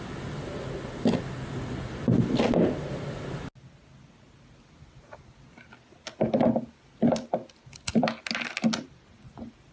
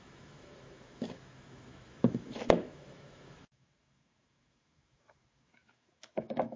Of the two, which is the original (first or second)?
first